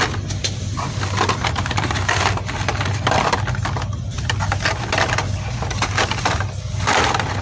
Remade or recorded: recorded